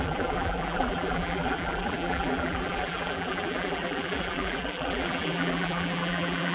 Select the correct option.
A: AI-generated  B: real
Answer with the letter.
A